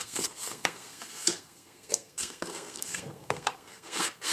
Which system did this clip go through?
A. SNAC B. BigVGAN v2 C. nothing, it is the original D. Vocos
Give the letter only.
A